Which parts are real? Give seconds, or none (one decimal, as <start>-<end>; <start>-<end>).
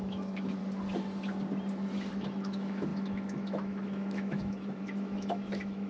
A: 0.6-2.1